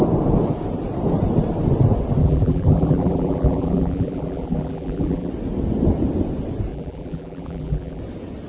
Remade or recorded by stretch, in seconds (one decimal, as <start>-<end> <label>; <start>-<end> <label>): 0.0-2.2 recorded; 2.2-5.3 remade; 5.3-6.7 recorded; 6.7-8.0 remade; 8.0-8.5 recorded